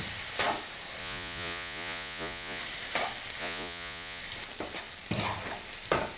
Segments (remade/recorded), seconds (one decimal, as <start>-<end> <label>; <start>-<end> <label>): 0.0-1.0 recorded; 1.0-2.6 remade; 2.6-3.4 recorded; 3.4-4.2 remade; 4.2-6.2 recorded